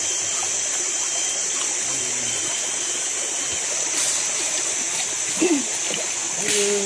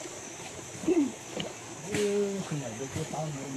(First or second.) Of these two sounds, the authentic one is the first